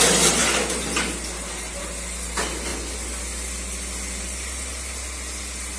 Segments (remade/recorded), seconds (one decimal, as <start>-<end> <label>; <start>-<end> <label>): 0.0-5.8 recorded